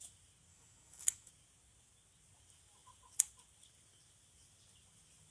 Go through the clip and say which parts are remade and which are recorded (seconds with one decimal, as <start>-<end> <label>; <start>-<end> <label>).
0.0-0.5 recorded; 0.5-1.3 remade; 1.3-5.3 recorded